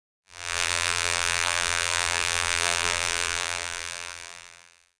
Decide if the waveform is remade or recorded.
remade